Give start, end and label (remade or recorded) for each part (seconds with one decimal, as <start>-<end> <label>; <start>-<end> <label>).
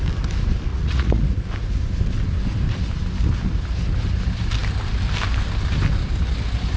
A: 0.0-0.7 recorded; 0.7-1.4 remade; 1.4-6.8 recorded